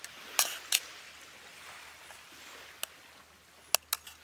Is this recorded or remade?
recorded